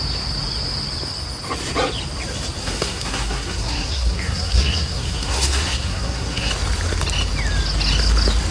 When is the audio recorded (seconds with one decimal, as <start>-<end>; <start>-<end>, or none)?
0.0-2.6; 6.5-8.5